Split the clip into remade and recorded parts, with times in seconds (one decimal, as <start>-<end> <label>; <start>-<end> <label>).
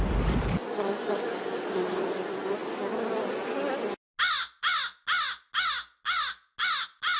0.0-7.2 recorded